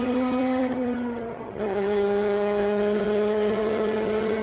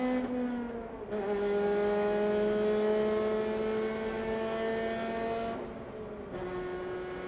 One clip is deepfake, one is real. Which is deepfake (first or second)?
first